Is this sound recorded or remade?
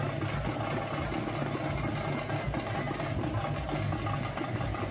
recorded